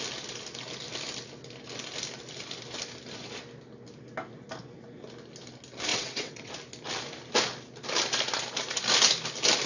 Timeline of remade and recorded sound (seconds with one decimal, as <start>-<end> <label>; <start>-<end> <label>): 0.0-5.9 recorded; 5.9-6.5 remade; 6.5-9.7 recorded

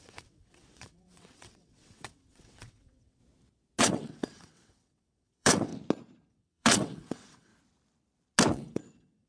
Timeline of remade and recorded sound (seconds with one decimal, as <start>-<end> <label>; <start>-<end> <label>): 0.0-3.2 remade; 3.2-3.8 recorded; 3.8-5.7 remade; 5.7-6.3 recorded; 6.3-7.5 remade; 7.5-8.5 recorded; 8.5-9.3 remade